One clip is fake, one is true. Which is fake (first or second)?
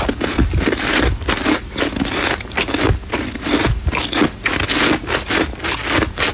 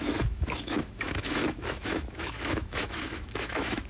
second